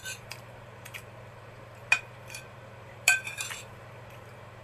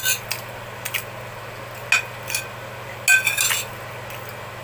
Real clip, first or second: second